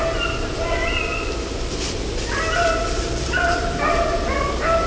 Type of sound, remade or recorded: recorded